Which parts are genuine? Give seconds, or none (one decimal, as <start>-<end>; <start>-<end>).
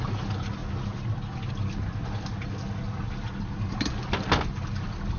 0.0-5.2